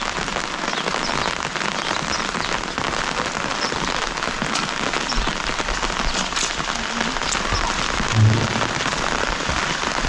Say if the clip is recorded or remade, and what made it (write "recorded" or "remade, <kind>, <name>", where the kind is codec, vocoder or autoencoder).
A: recorded